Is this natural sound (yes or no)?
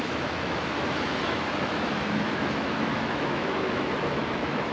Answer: no